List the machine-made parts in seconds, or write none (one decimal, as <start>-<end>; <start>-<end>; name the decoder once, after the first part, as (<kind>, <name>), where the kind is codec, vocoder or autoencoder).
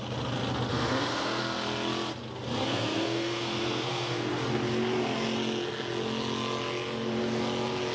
0.7-1.4 (codec, SNAC); 2.6-4.3